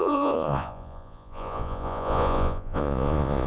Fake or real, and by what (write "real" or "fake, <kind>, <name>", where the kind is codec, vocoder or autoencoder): fake, vocoder, Vocos